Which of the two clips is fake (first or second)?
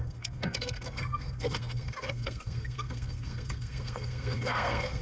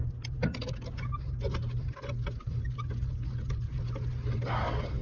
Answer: first